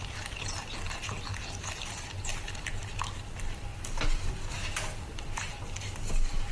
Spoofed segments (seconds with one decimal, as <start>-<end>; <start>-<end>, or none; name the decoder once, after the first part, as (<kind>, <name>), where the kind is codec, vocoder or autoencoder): 3.7-4.3 (vocoder, BigVGAN v2)